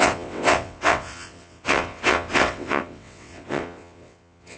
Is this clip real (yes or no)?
no